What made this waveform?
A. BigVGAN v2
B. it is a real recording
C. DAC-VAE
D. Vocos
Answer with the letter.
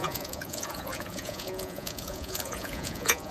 D